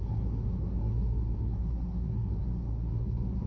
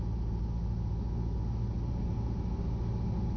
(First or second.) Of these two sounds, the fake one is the first